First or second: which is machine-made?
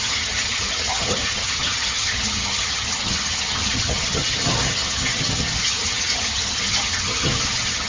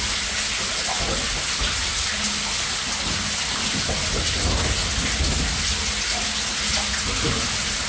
first